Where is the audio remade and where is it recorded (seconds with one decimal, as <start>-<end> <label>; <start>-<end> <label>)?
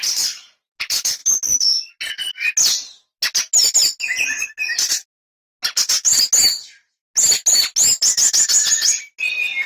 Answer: 0.0-9.7 recorded